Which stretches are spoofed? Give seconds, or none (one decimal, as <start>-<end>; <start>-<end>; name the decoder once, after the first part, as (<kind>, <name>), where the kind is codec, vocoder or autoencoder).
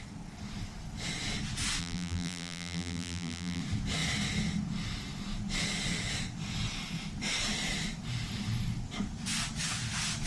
1.8-3.6 (vocoder, BigVGAN v2)